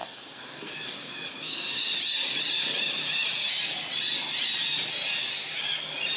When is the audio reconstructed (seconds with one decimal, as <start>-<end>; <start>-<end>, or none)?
0.0-1.8